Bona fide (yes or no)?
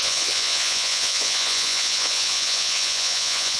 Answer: no